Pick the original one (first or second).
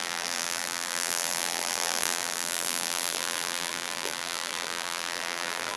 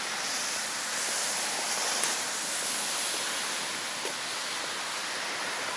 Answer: second